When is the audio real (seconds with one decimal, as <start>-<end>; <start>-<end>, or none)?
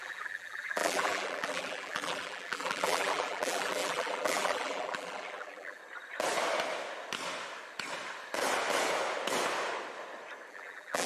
5.8-10.5